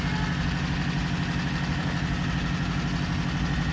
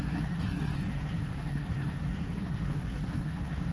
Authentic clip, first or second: first